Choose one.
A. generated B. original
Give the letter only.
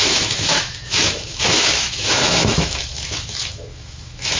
A